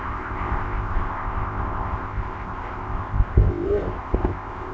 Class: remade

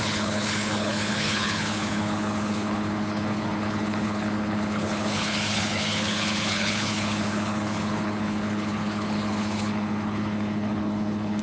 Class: remade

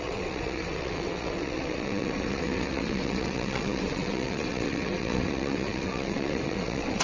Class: remade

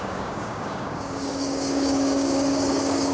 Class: remade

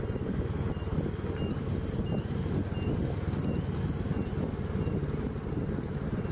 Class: recorded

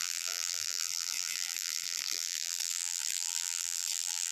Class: remade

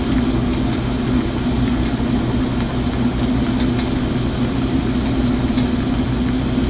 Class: recorded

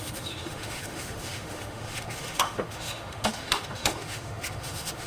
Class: remade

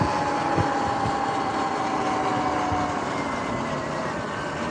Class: recorded